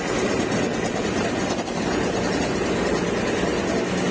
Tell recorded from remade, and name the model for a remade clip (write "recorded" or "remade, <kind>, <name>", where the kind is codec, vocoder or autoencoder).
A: recorded